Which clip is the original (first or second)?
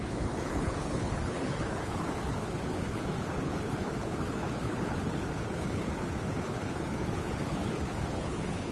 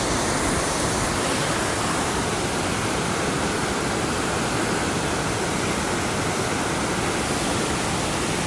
second